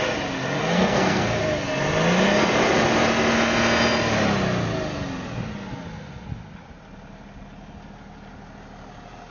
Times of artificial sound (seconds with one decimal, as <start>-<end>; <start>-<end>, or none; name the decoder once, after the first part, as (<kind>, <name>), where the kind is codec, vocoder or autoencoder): 0.6-1.4 (codec, SNAC)